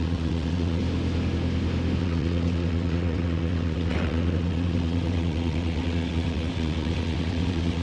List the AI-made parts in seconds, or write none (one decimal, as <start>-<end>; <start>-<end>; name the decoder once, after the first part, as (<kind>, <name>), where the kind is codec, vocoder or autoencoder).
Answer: 0.0-0.8 (vocoder, WaveNeXt); 2.0-7.8